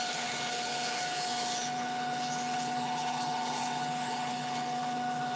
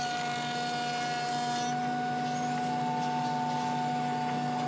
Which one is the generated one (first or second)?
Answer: first